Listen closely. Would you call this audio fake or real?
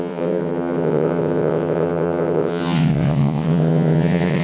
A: fake